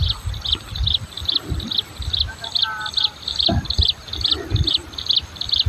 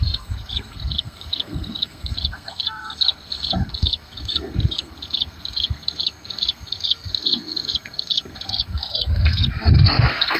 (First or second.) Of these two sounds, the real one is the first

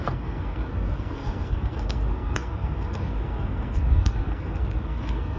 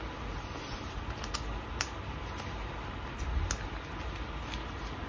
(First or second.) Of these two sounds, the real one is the second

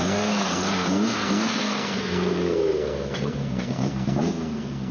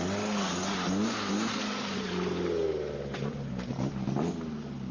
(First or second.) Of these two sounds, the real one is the second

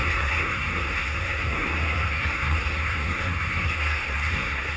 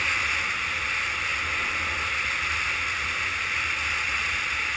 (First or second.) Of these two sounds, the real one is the second